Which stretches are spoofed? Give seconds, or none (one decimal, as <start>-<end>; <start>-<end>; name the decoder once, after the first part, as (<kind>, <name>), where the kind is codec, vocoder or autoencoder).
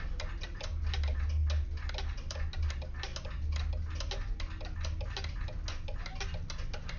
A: none